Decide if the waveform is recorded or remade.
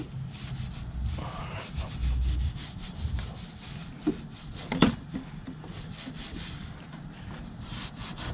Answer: recorded